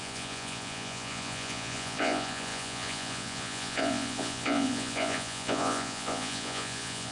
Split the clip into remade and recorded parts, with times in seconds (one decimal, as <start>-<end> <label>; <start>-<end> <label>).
0.0-7.1 remade